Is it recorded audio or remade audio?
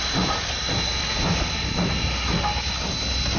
recorded